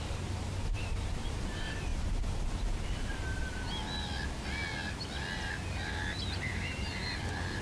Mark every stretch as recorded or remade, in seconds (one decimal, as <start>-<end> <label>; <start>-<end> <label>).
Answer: 0.0-1.9 remade; 1.9-6.2 recorded; 6.2-6.9 remade; 6.9-7.6 recorded